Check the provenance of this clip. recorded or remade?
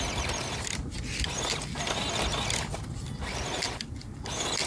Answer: recorded